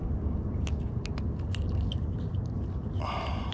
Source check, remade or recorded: recorded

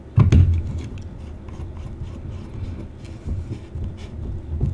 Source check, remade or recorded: recorded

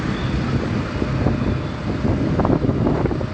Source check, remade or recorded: recorded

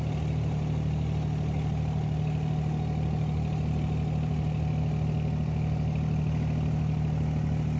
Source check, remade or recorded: recorded